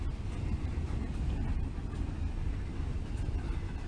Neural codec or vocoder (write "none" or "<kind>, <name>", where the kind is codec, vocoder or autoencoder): none